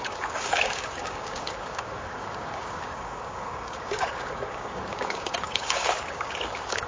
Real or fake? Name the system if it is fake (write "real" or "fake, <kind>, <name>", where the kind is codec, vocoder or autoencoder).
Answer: fake, codec, DAC